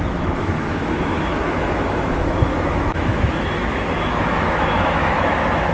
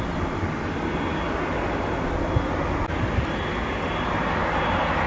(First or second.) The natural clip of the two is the second